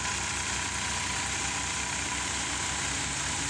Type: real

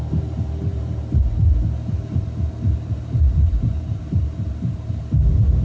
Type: fake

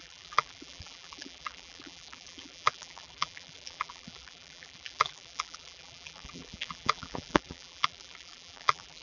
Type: fake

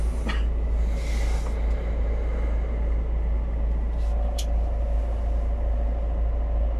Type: real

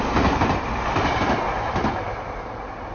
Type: real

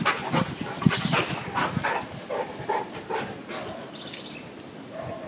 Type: real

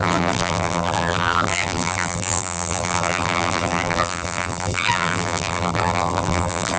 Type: fake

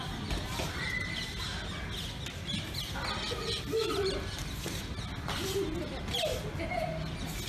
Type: real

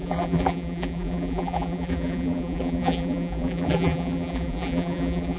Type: fake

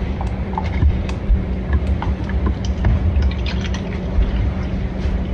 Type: fake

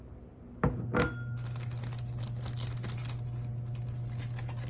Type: real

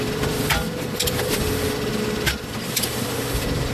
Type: fake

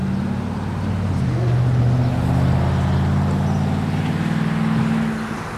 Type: real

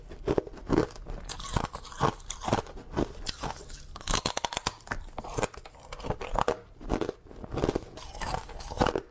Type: real